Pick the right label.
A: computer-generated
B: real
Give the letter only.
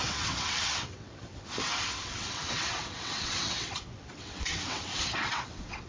A